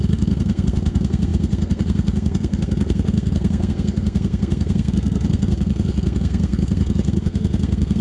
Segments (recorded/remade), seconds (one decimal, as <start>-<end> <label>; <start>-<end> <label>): 0.0-8.0 remade